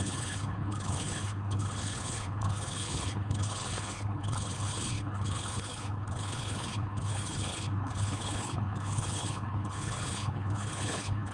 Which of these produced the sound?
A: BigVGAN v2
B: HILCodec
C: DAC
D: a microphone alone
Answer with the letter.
B